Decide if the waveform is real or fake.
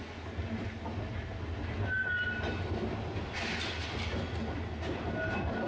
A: real